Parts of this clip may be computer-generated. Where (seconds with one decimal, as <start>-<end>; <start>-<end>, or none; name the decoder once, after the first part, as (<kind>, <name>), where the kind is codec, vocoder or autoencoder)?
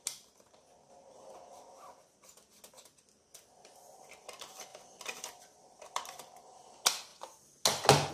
4.7-6.0 (vocoder, BigVGAN v2)